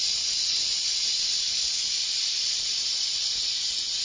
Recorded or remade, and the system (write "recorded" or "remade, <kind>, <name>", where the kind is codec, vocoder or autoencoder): recorded